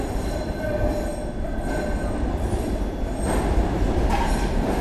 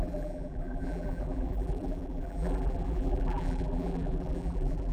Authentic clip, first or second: first